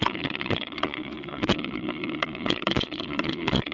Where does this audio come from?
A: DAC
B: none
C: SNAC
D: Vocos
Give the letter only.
D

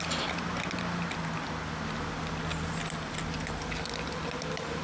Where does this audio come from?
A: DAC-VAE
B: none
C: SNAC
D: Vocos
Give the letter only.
B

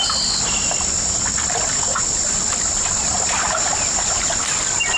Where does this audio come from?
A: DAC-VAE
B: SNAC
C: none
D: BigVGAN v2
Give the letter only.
C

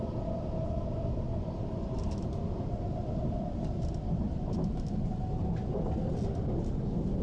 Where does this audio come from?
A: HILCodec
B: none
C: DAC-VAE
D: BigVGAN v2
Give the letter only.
B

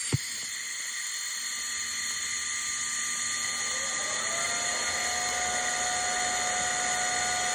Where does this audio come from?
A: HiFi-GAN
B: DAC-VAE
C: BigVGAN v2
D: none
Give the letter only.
D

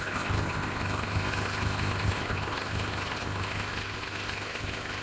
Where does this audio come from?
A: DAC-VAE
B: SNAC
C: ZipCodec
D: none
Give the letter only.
C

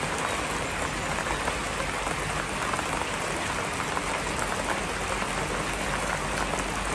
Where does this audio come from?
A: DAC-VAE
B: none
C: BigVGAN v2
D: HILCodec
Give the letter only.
B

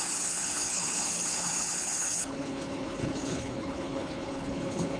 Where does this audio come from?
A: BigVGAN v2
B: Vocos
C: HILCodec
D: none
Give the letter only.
C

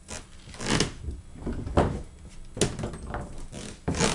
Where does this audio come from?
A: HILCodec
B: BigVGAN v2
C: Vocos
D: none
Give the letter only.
D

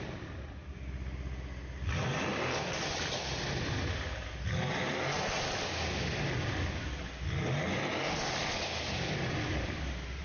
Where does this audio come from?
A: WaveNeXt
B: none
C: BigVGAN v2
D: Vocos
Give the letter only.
B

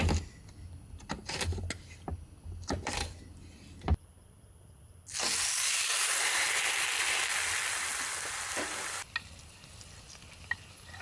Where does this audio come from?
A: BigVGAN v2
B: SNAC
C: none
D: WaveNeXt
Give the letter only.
C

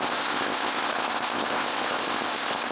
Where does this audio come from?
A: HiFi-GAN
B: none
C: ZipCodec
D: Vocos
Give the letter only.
C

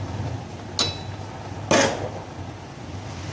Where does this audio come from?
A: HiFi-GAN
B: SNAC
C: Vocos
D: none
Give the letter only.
D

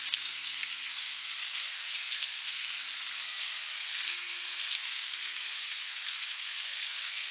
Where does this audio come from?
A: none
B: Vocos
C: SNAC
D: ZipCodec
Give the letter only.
C